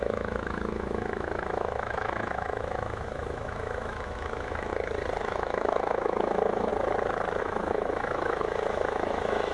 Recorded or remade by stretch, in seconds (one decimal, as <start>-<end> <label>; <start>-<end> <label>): 0.0-4.7 remade; 4.7-5.2 recorded; 5.2-6.7 remade; 6.7-7.4 recorded; 7.4-9.5 remade